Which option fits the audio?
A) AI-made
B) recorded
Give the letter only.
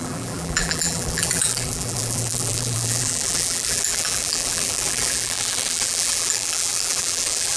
A